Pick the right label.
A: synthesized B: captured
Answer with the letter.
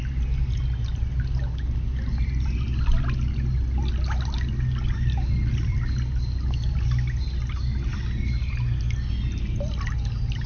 B